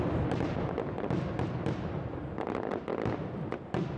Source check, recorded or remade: recorded